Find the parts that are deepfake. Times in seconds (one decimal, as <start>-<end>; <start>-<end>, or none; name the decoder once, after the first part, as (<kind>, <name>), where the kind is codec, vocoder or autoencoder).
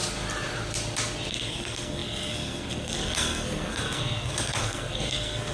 1.3-5.5 (codec, SNAC)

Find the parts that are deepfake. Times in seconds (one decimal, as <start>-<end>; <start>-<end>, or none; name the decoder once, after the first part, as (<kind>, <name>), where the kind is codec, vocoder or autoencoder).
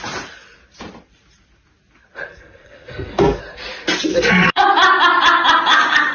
2.3-3.4 (codec, SNAC); 4.1-4.6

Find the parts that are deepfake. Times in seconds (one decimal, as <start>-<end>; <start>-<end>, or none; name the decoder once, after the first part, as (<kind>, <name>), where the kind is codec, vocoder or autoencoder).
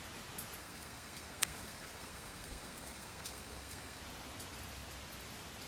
0.6-4.0 (codec, SNAC)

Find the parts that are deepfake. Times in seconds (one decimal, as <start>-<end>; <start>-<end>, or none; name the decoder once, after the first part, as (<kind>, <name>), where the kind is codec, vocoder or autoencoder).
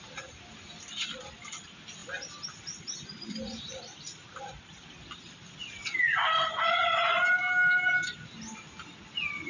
none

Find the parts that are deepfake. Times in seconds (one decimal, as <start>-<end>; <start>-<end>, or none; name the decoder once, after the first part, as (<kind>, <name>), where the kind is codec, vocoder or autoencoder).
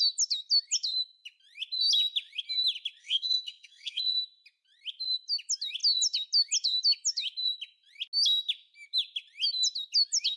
3.0-4.0 (codec, SNAC)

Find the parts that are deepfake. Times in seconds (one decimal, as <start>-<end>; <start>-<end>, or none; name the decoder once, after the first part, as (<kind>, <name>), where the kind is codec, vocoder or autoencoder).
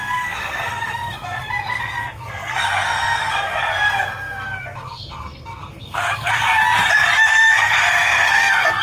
0.0-6.6 (codec, SNAC); 7.3-8.8